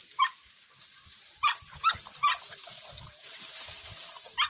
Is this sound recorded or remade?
remade